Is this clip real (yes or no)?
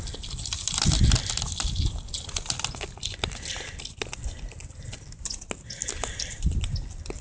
yes